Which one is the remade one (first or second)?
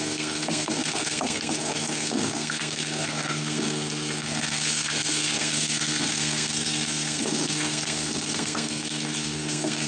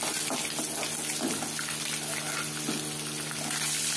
first